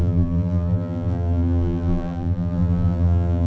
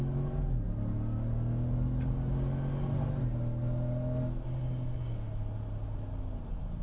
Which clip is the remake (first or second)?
first